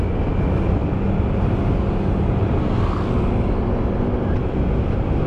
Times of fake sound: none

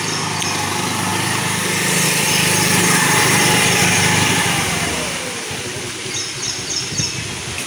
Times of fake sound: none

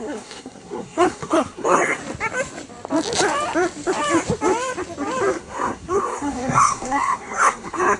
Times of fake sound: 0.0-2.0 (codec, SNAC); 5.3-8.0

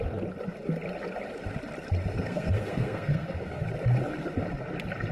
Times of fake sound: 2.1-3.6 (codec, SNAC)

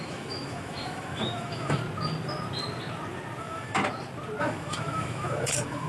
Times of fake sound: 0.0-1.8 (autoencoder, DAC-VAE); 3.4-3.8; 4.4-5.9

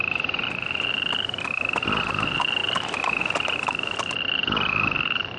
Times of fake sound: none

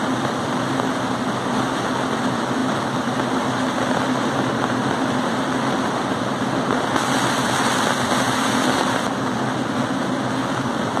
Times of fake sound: none

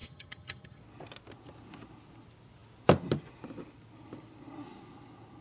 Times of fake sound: 0.0-0.8 (vocoder, HiFi-GAN)